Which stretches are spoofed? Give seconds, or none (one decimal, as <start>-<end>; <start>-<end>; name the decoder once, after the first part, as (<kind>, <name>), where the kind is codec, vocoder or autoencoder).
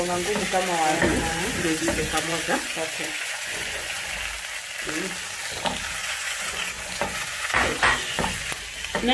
1.1-4.2 (vocoder, Vocos); 6.0-8.6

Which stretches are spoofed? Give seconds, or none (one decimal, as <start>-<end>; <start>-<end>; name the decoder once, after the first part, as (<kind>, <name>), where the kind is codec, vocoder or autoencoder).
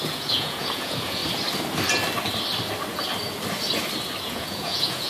0.0-1.2 (vocoder, Vocos); 4.3-5.1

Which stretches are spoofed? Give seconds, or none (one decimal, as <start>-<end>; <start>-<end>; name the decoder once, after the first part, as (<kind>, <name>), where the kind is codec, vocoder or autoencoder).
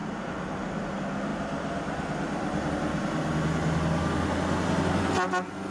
none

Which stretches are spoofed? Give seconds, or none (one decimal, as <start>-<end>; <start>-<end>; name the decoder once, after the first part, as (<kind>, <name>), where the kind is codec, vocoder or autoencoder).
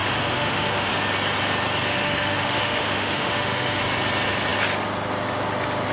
0.0-0.9 (autoencoder, DAC-VAE); 1.9-3.8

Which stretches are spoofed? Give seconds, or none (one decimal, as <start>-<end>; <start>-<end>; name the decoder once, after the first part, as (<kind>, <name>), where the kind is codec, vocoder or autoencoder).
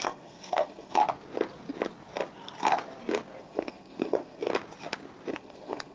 0.0-1.0 (codec, SNAC); 3.4-4.5; 5.3-5.9